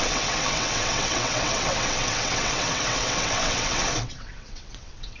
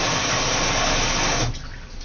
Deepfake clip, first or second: first